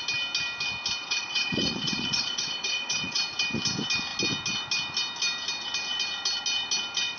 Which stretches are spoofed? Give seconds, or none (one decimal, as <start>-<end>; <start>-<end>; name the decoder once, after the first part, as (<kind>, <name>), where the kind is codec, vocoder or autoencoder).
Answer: 1.0-3.2 (vocoder, Vocos)